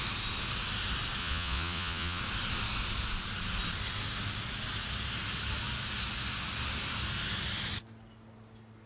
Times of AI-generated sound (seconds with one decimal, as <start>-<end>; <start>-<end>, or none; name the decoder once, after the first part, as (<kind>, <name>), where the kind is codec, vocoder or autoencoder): 1.2-2.2 (vocoder, Vocos)